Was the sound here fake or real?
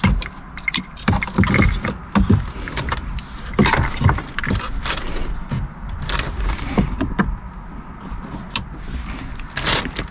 real